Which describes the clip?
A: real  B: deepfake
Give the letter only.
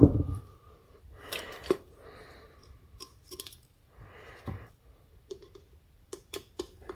B